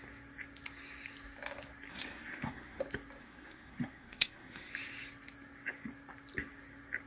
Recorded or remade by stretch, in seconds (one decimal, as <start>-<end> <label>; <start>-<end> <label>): 0.0-1.9 recorded; 1.9-2.8 remade; 2.8-3.2 recorded; 3.2-4.7 remade; 4.7-7.1 recorded